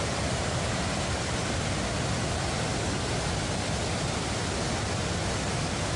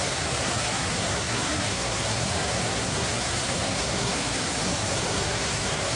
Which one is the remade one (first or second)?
second